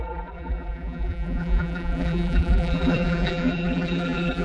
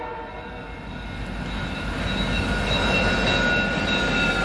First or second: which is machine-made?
first